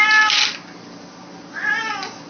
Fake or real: real